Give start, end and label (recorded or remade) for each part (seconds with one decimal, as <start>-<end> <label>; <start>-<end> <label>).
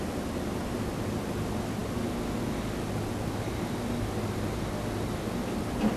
0.0-6.0 recorded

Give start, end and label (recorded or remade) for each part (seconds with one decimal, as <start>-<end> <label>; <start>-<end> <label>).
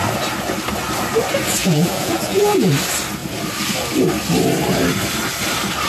0.0-1.6 recorded; 1.6-2.7 remade; 2.7-5.9 recorded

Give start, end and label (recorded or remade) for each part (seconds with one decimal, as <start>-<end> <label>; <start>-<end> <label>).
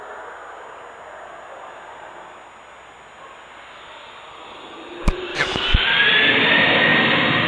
0.0-5.3 recorded; 5.3-6.0 remade; 6.0-7.5 recorded